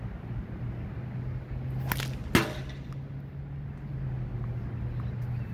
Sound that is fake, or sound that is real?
real